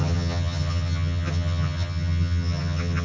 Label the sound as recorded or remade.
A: remade